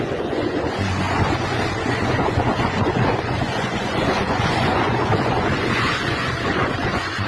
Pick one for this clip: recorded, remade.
remade